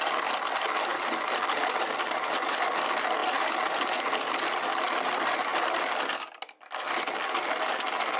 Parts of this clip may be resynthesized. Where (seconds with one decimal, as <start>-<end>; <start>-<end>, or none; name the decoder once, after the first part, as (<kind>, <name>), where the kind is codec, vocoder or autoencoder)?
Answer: none